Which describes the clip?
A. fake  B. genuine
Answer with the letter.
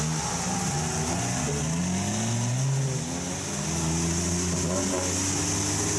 B